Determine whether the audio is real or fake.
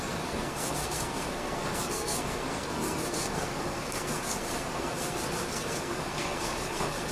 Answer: fake